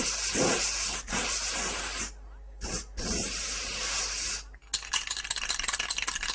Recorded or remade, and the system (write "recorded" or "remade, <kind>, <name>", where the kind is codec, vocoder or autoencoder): recorded